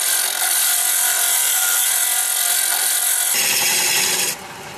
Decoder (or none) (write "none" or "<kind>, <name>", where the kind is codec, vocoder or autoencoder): none